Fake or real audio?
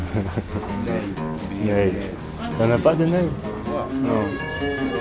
real